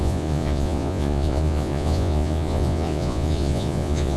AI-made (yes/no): yes